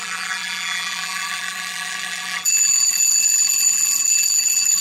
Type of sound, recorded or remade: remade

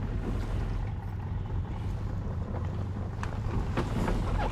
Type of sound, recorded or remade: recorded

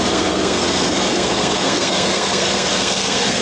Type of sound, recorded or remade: remade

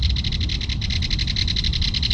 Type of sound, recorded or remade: recorded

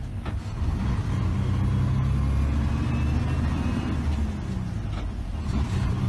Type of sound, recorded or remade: recorded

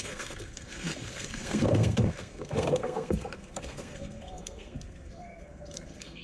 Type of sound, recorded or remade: remade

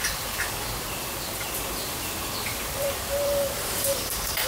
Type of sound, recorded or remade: remade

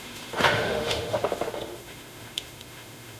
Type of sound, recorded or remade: remade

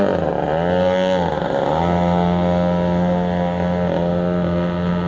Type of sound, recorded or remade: recorded